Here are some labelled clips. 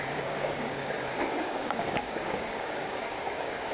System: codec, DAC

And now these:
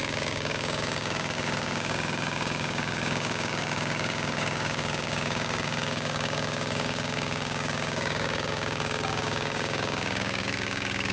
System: codec, DAC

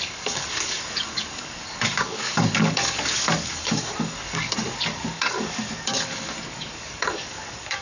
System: codec, DAC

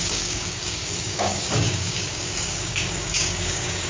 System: codec, DAC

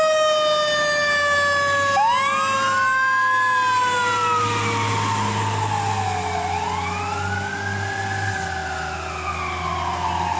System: none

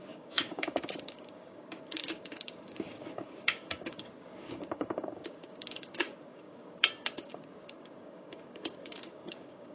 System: codec, DAC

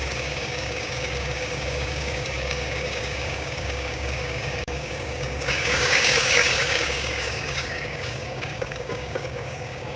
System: codec, DAC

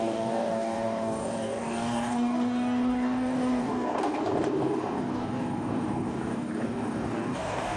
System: codec, DAC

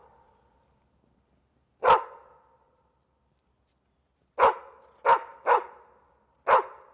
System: none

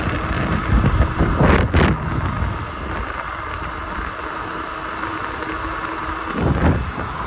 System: none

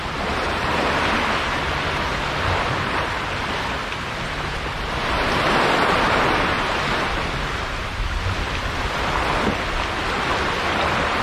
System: none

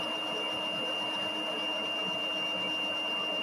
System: none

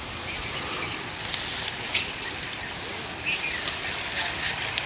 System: none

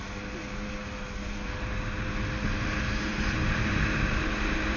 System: none